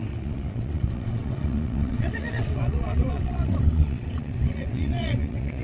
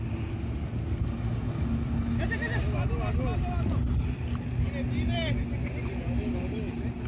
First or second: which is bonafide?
second